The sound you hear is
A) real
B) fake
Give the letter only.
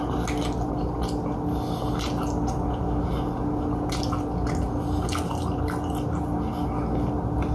A